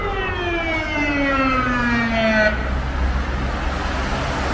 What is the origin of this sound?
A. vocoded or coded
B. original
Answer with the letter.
B